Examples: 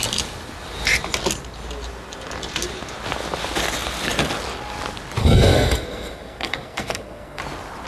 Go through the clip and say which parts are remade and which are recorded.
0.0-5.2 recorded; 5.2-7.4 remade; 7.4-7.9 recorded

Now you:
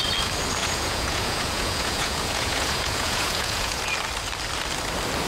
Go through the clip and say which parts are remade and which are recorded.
0.0-0.6 recorded; 0.6-3.8 remade; 3.8-5.3 recorded

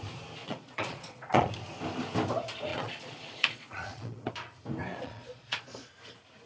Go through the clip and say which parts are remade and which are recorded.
0.0-0.4 recorded; 0.4-1.5 remade; 1.5-2.7 recorded; 2.7-4.3 remade; 4.3-4.9 recorded; 4.9-5.9 remade; 5.9-6.5 recorded